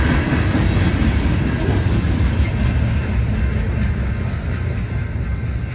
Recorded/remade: recorded